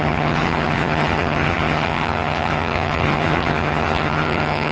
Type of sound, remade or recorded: remade